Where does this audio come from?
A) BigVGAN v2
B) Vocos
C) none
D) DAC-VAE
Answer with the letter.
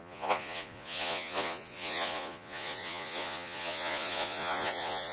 B